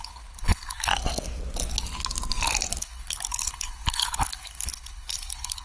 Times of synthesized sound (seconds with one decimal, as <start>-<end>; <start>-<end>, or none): 0.0-0.9; 2.8-5.6

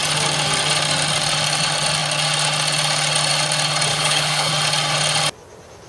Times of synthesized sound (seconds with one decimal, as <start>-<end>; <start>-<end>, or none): 3.9-4.5